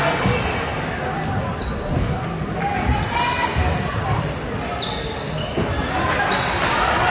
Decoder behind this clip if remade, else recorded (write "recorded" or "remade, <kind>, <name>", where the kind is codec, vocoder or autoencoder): recorded